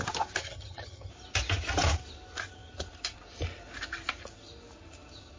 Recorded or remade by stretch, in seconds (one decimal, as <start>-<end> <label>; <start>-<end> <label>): 0.0-0.4 recorded; 0.4-1.1 remade; 1.1-5.4 recorded